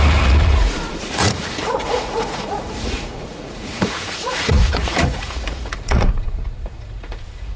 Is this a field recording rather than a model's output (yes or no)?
no